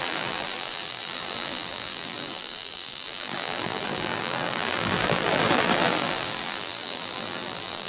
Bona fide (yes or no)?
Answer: no